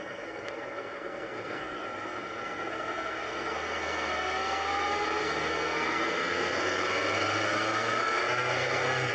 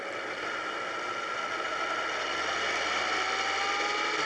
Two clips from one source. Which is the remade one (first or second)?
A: first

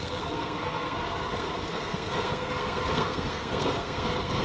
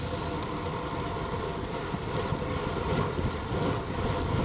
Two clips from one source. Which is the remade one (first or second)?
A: first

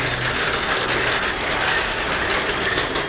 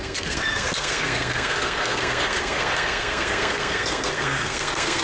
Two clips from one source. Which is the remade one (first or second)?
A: second